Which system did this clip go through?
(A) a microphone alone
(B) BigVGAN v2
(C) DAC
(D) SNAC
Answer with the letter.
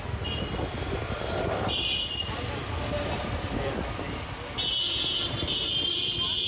A